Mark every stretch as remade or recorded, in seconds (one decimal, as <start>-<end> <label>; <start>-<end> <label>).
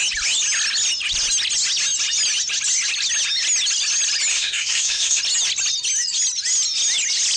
0.0-4.3 recorded; 4.3-5.2 remade; 5.2-7.4 recorded